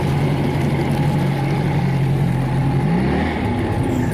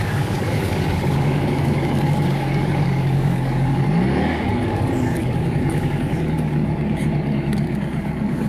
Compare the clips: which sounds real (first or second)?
first